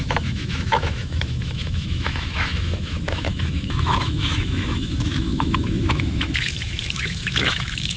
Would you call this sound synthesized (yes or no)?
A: yes